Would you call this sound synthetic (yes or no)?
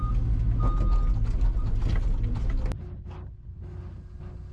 no